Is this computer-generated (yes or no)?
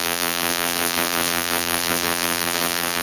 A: yes